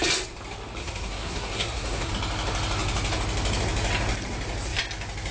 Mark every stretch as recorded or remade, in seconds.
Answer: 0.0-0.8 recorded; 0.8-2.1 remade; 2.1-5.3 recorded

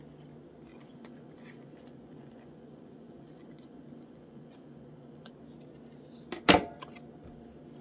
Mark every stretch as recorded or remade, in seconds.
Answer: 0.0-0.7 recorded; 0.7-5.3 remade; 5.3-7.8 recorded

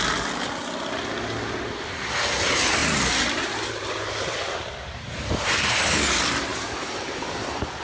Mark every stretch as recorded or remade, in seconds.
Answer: 0.0-2.8 recorded; 2.8-5.9 remade; 5.9-6.5 recorded; 6.5-7.8 remade